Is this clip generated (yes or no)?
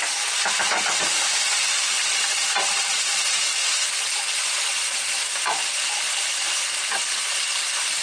no